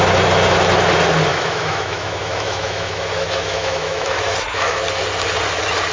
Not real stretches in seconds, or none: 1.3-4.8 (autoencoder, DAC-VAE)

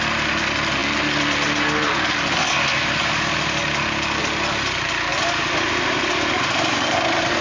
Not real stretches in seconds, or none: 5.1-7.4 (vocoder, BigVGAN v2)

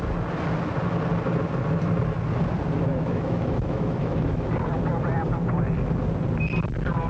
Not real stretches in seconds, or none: 2.9-4.5 (autoencoder, DAC-VAE)